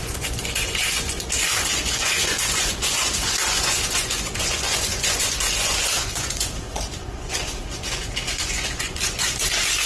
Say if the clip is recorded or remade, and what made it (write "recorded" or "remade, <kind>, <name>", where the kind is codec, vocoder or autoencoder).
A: remade, vocoder, Vocos